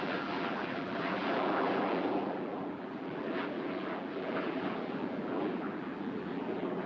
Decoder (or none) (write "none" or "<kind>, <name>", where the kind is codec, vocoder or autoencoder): vocoder, BigVGAN v2